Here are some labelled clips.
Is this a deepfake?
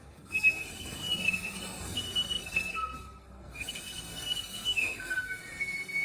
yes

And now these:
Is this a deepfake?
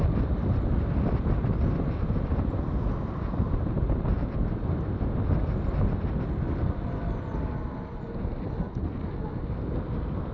no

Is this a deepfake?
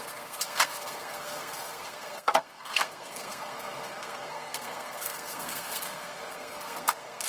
yes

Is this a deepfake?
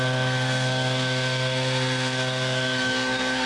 yes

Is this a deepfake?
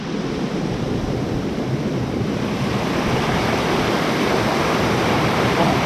no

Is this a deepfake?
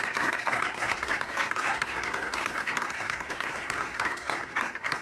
yes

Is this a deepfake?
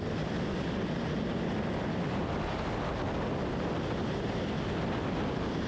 no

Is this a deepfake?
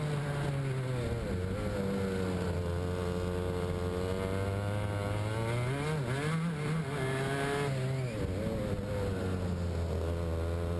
no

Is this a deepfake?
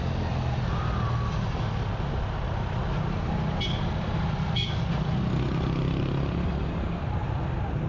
no